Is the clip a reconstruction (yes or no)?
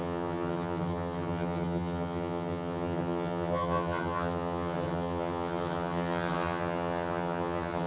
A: yes